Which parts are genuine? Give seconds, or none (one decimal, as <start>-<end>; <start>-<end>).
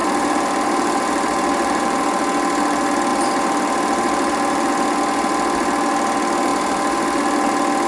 2.0-3.1; 4.7-6.5; 7.2-7.9